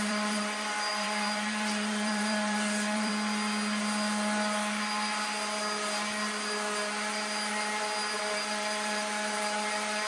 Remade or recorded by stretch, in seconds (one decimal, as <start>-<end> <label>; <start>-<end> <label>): 0.0-3.1 remade; 3.1-8.2 recorded; 8.2-10.1 remade